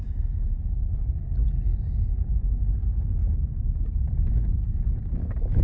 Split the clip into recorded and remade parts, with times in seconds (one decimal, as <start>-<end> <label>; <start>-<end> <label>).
0.0-5.6 recorded